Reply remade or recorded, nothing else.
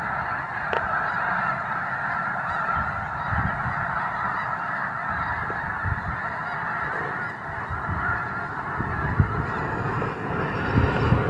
recorded